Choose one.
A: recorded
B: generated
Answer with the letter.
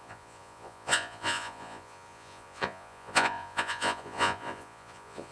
B